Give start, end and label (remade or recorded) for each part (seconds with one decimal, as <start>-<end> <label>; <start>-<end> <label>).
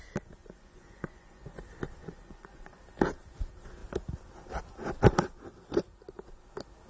0.0-0.4 recorded; 0.4-1.6 remade; 1.6-2.0 recorded; 2.0-2.8 remade; 2.8-6.9 recorded